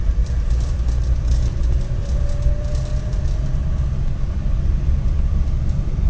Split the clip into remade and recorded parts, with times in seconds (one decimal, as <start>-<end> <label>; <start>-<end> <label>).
0.0-2.0 remade; 2.0-6.1 recorded